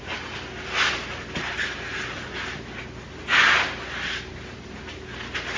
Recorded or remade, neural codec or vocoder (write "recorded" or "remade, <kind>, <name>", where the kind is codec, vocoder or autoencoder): recorded